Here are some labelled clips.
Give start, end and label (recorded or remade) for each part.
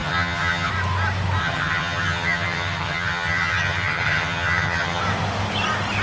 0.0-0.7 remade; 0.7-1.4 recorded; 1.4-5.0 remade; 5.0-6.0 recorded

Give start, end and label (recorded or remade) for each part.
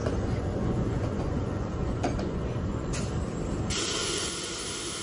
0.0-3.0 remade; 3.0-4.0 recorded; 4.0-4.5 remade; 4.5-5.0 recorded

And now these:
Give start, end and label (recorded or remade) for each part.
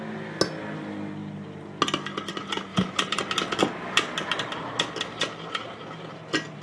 0.0-2.7 recorded; 2.7-3.2 remade; 3.2-6.6 recorded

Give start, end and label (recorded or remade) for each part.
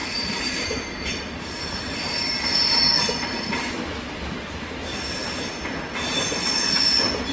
0.0-2.8 remade; 2.8-7.3 recorded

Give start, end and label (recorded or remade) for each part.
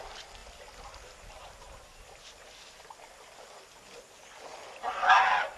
0.0-0.4 recorded; 0.4-3.8 remade; 3.8-5.6 recorded